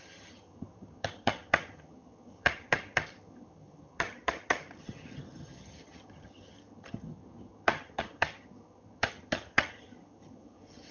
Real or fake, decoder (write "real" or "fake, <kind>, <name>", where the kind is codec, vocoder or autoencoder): fake, vocoder, HiFi-GAN